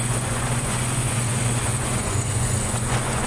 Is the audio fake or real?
fake